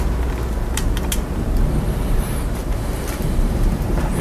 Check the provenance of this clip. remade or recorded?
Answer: remade